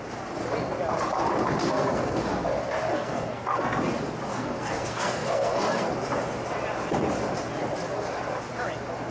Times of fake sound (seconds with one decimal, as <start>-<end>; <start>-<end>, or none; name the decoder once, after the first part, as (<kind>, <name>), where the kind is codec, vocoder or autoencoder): 1.6-2.3 (codec, SNAC); 2.9-3.8; 4.3-5.9